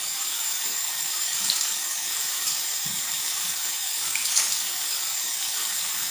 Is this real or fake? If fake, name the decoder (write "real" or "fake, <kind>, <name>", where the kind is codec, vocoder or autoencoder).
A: fake, codec, DAC